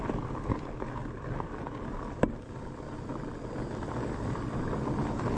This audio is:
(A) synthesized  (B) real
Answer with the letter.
B